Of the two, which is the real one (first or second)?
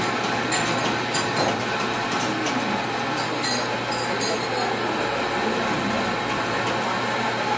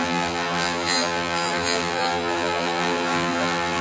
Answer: first